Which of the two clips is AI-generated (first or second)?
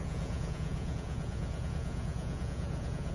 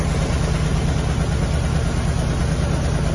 first